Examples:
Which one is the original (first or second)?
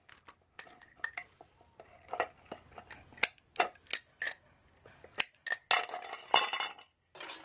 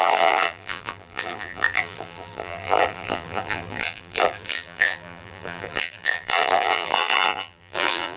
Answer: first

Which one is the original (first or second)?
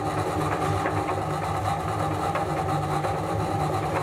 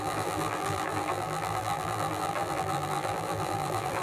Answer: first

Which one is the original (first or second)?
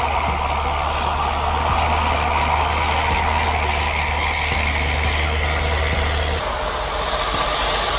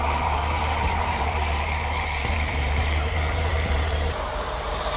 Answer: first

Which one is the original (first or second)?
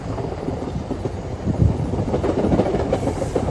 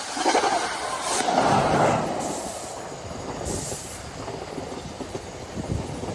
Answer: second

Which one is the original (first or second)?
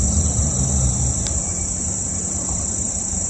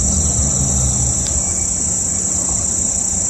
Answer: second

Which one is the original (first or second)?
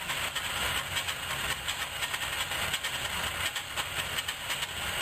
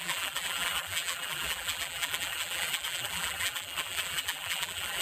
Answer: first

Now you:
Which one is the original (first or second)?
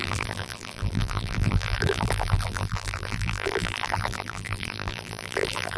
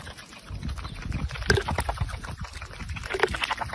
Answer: second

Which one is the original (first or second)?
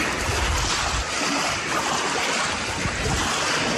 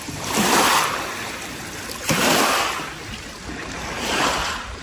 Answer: first